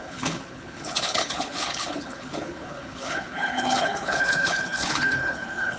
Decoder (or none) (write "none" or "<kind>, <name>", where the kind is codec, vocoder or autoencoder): codec, HILCodec